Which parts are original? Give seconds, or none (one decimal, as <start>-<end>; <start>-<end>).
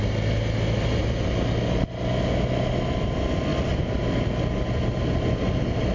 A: 0.0-1.0; 1.9-5.9